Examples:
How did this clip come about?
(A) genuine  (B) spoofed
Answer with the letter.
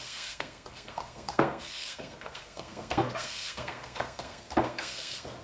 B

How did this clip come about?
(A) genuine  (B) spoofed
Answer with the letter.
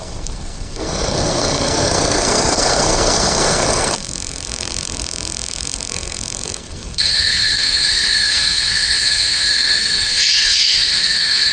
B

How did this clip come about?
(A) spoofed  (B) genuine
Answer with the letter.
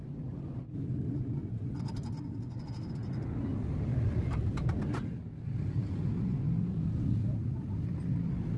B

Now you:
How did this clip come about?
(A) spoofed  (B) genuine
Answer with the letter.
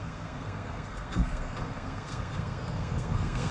A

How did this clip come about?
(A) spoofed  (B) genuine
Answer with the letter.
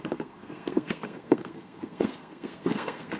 A